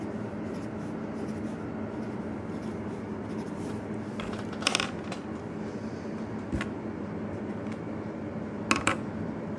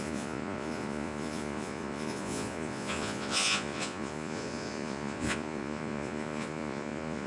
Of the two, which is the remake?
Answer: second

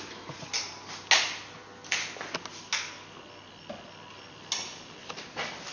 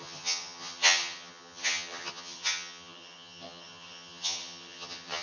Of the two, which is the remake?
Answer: second